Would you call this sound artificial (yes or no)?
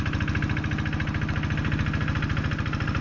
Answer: no